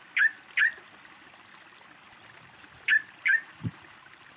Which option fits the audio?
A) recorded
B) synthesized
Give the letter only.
A